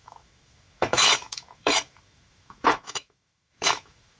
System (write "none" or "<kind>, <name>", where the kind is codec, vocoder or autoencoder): autoencoder, DAC-VAE